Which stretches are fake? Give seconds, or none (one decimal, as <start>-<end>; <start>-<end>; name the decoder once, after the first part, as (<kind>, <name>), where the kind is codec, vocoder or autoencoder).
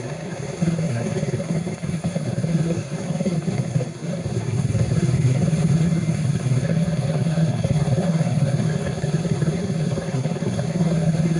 0.0-11.4 (codec, SNAC)